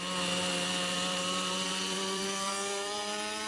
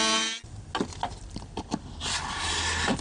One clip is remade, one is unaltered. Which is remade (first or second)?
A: first